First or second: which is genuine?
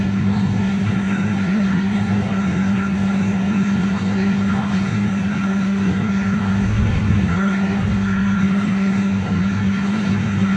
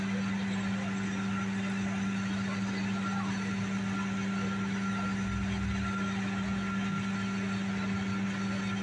second